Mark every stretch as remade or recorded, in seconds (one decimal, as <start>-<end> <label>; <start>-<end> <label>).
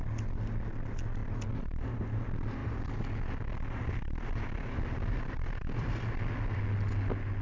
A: 0.0-1.2 recorded; 1.2-1.8 remade; 1.8-2.6 recorded; 2.6-6.6 remade; 6.6-7.4 recorded